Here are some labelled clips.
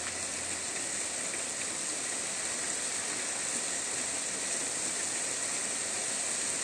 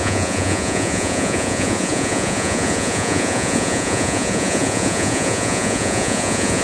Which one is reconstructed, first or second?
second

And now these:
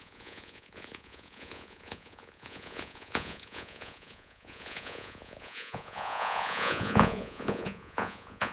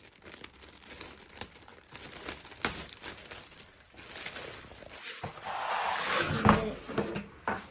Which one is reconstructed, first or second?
first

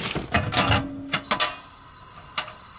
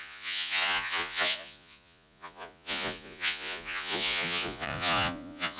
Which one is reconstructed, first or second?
second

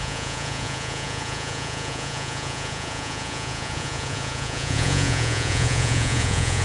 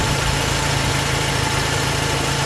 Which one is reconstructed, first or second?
first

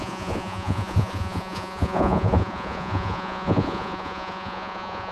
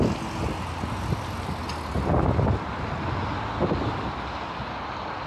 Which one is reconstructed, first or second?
first